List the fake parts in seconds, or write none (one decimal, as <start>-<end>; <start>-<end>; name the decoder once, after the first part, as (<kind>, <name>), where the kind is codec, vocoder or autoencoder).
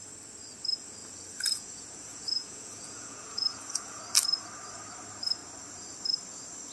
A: 1.0-4.0 (vocoder, Vocos)